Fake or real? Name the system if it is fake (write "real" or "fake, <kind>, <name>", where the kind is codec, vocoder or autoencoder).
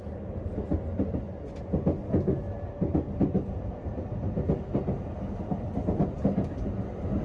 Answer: real